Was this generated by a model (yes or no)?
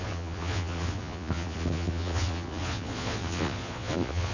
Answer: yes